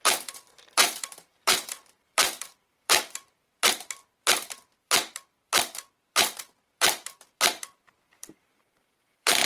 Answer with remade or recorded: remade